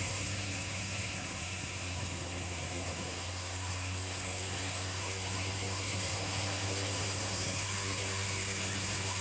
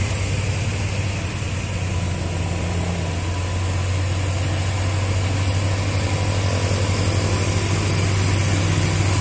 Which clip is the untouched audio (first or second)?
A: second